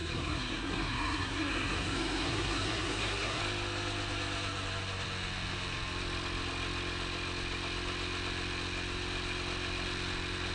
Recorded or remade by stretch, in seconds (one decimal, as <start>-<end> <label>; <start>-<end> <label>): 0.0-3.4 remade; 3.4-10.5 recorded